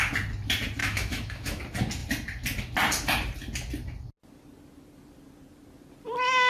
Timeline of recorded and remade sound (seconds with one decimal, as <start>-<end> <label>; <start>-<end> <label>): 0.0-0.8 recorded; 0.8-1.6 remade; 1.6-6.5 recorded